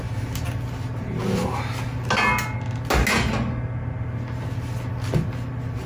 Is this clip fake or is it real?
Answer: real